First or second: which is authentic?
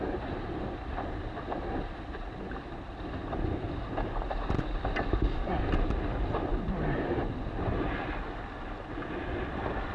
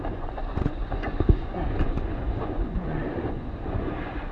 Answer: first